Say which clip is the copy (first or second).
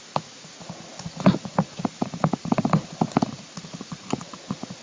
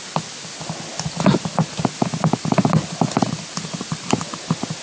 first